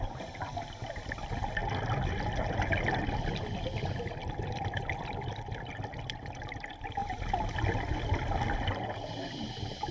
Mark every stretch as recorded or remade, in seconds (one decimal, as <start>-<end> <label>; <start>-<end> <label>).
0.0-1.6 remade; 1.6-3.8 recorded; 3.8-7.0 remade; 7.0-9.9 recorded